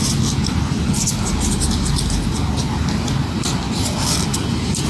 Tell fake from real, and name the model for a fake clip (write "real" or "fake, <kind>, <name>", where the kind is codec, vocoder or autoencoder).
real